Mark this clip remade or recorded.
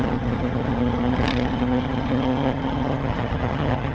remade